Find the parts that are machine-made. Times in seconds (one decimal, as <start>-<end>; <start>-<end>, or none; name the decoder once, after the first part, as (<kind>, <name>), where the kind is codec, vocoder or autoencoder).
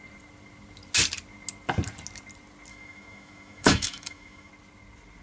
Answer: 2.7-4.5 (autoencoder, DAC-VAE)